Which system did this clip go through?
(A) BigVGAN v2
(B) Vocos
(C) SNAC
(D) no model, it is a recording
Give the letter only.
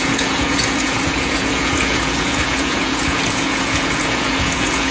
B